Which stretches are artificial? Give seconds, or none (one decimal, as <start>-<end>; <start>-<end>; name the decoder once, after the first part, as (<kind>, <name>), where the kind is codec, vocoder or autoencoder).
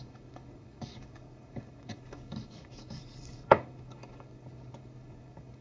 0.0-5.6 (codec, DAC)